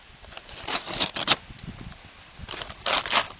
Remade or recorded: recorded